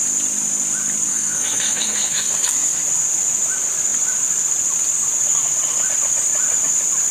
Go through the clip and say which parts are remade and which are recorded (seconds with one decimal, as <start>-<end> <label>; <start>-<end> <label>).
0.0-1.1 recorded; 1.1-2.8 remade; 2.8-7.1 recorded